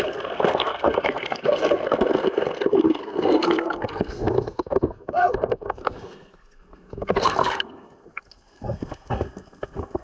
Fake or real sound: fake